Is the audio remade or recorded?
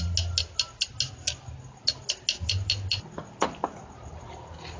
recorded